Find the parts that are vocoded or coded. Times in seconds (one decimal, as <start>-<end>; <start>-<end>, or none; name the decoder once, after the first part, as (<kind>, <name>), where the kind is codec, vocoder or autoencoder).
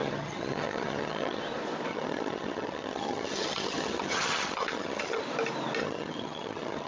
0.0-1.4 (vocoder, HiFi-GAN); 1.9-5.2; 5.8-6.9